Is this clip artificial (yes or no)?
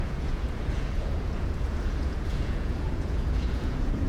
yes